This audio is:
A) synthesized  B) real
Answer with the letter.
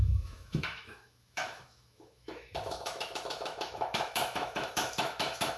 A